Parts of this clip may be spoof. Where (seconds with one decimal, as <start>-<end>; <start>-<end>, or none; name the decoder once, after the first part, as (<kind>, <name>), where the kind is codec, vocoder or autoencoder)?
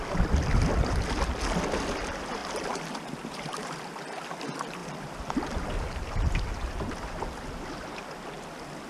4.8-5.7 (vocoder, BigVGAN v2)